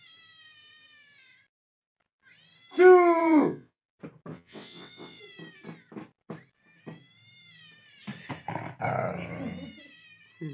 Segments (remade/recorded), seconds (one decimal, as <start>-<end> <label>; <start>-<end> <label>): 0.0-3.2 recorded; 3.2-3.8 remade; 3.8-4.3 recorded; 4.3-5.2 remade; 5.2-10.5 recorded